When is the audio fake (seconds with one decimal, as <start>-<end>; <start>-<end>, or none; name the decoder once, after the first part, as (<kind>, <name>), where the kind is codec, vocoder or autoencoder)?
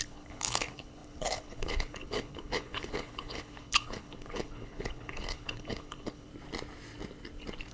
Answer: 0.0-6.3 (codec, HILCodec)